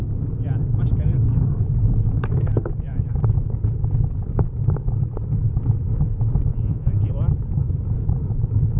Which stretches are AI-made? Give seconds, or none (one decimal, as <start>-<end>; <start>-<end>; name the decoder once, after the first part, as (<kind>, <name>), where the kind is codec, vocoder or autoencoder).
6.5-7.1 (vocoder, Vocos)